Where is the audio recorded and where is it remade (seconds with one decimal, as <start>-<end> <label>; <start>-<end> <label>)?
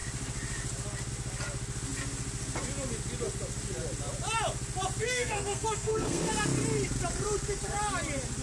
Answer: 0.0-5.0 recorded; 5.0-6.3 remade; 6.3-8.4 recorded